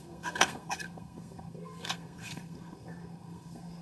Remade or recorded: remade